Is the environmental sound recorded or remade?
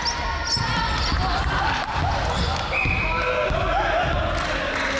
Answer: recorded